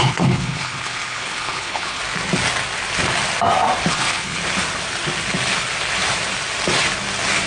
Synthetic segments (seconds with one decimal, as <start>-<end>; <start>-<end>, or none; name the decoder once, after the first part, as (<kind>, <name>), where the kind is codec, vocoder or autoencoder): 0.0-2.0 (codec, HILCodec); 3.9-4.4